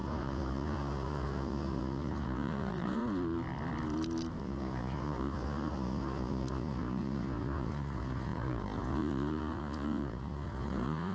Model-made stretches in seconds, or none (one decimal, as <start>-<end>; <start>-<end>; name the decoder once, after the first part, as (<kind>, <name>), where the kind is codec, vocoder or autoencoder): 0.0-3.0 (vocoder, Vocos); 4.4-11.1